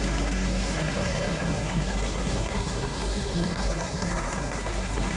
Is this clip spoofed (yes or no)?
yes